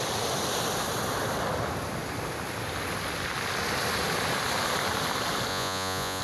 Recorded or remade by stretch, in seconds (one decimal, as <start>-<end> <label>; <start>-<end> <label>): 0.0-5.5 recorded; 5.5-6.2 remade